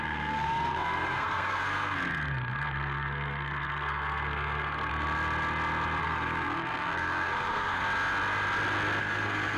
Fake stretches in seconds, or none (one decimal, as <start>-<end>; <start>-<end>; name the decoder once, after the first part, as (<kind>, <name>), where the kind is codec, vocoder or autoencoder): 0.0-4.9 (codec, SNAC); 6.0-7.8; 9.0-9.6